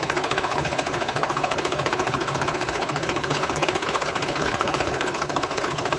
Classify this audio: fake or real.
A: fake